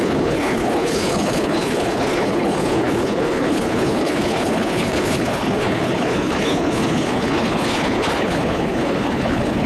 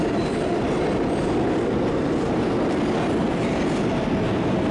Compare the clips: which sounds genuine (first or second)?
second